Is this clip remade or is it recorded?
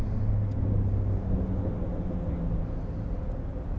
recorded